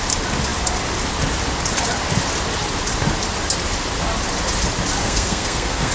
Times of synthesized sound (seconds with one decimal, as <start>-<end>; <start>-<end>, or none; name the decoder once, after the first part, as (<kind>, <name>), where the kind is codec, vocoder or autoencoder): 5.0-5.9 (codec, SNAC)